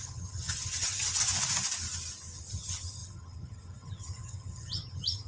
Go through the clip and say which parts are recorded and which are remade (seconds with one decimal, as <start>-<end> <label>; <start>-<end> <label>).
0.0-1.3 remade; 1.3-2.4 recorded; 2.4-5.3 remade